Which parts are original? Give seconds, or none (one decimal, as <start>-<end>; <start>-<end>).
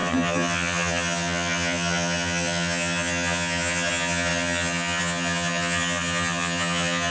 none